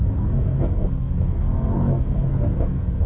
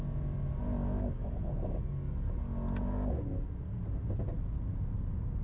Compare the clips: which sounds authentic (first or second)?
second